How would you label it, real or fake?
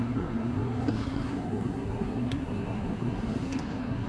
fake